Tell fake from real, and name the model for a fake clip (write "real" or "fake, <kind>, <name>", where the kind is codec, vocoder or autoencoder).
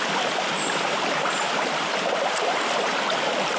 fake, vocoder, BigVGAN v2